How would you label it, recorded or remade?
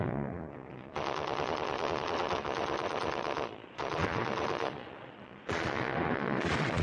remade